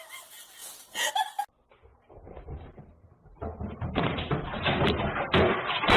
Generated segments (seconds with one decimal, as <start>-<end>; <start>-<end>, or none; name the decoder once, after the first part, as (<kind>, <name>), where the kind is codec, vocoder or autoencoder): 0.6-1.1 (vocoder, Vocos)